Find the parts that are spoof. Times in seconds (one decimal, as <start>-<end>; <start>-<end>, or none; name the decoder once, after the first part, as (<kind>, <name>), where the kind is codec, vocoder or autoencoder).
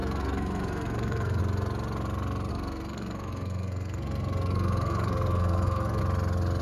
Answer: 0.0-1.4 (codec, SNAC); 2.5-6.0